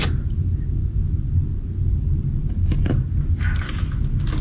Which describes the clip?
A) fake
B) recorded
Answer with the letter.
B